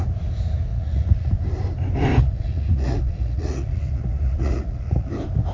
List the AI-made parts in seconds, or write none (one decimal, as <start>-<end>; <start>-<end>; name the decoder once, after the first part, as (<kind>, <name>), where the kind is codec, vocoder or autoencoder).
0.7-1.3 (vocoder, Vocos); 2.1-5.1